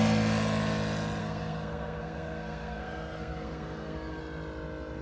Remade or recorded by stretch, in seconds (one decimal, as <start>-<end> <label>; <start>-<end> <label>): 0.0-1.2 recorded; 1.2-4.2 remade; 4.2-5.0 recorded